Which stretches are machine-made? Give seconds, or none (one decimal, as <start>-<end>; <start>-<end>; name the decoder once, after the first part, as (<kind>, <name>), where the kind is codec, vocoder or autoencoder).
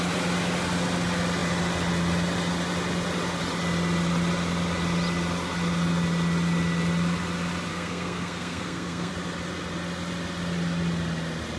7.7-9.1 (codec, SNAC)